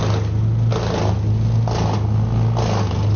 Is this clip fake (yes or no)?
no